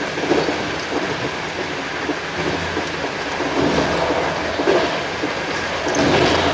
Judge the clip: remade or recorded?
recorded